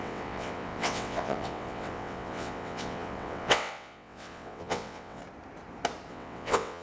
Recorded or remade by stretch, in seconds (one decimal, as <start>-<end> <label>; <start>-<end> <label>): 0.0-5.2 remade; 5.2-6.1 recorded; 6.1-6.8 remade